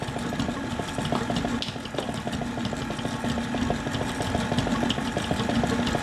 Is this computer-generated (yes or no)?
no